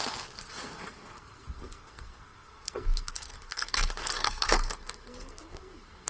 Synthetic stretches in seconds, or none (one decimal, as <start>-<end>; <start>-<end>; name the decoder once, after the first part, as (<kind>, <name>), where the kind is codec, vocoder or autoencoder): 0.0-6.1 (codec, SNAC)